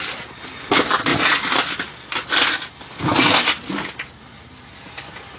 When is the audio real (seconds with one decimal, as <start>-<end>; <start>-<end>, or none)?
0.0-5.4